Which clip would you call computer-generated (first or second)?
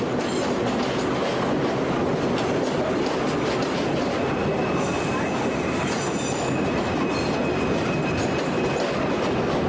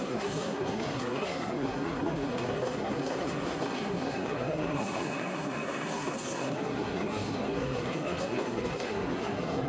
second